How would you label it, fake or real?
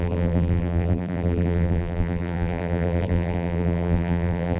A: fake